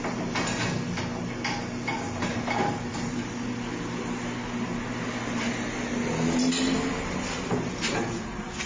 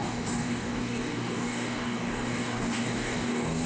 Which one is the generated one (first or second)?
second